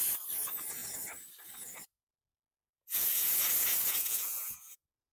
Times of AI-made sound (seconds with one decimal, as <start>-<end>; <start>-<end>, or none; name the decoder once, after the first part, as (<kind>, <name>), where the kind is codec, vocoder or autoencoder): 2.3-5.1 (vocoder, Vocos)